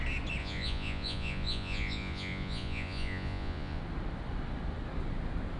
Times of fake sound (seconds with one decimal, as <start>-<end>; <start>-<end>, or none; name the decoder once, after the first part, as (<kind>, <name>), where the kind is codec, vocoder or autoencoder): 0.4-3.8 (vocoder, Vocos)